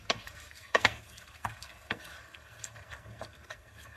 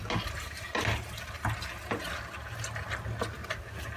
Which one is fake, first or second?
first